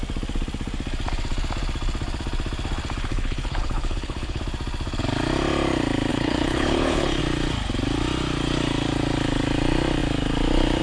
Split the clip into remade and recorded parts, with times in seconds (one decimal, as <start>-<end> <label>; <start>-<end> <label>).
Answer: 0.0-3.1 recorded; 3.1-4.4 remade; 4.4-6.1 recorded; 6.1-7.2 remade; 7.2-10.8 recorded